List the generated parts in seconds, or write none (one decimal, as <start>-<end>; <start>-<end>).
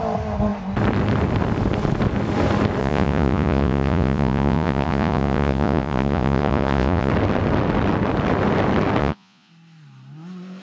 2.8-7.1; 9.0-9.5